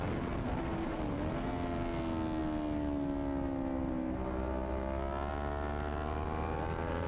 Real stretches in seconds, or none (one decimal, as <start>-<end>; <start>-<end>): 0.0-0.4; 1.0-7.1